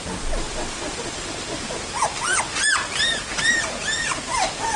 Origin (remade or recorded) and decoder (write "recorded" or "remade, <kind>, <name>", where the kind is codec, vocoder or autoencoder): remade, vocoder, BigVGAN v2